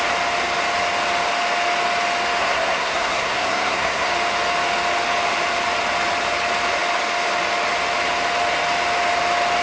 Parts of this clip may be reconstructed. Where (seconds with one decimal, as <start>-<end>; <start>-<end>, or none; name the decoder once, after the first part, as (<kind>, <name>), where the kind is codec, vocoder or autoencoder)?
2.4-4.1 (codec, SNAC)